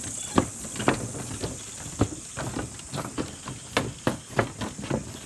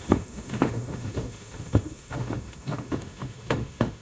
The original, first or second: first